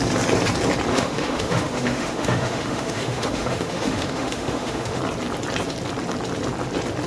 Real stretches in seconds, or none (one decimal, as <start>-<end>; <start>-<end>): 0.0-0.9; 5.0-7.1